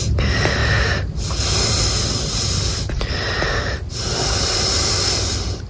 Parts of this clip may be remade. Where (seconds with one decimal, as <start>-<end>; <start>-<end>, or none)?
none